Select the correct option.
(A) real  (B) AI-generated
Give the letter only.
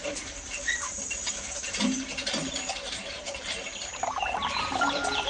B